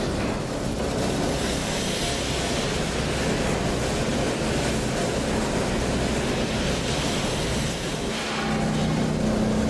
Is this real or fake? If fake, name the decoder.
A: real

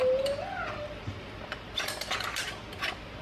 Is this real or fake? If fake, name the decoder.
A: real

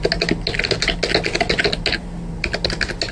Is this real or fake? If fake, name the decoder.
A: real